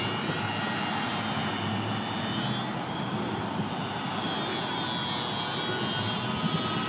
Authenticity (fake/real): real